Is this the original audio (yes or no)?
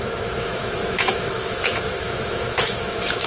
no